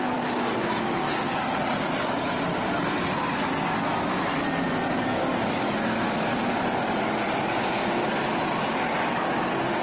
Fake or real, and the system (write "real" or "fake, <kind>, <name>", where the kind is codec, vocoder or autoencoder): fake, vocoder, BigVGAN v2